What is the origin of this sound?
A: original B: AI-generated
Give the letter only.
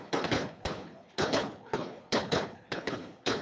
B